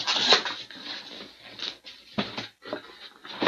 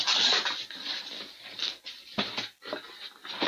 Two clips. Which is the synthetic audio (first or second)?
second